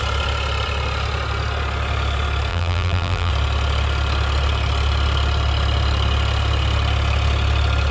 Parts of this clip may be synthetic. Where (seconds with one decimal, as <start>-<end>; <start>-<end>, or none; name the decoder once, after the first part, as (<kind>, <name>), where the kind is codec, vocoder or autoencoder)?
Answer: 2.5-3.3 (vocoder, BigVGAN v2)